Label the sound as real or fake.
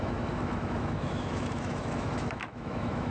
fake